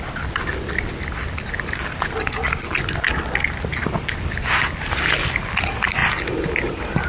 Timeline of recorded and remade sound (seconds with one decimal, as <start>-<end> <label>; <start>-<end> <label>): 0.0-7.1 recorded

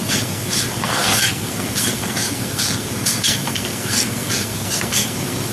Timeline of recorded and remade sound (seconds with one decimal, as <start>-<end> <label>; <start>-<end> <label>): 0.0-5.5 remade